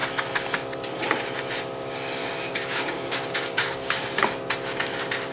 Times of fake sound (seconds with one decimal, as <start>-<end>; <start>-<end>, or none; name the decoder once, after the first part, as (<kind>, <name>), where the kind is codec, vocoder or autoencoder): 2.2-4.2 (codec, DAC)